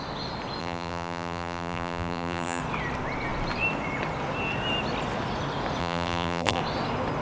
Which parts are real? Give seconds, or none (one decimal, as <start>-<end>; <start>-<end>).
0.0-0.6; 2.6-5.8; 6.6-7.2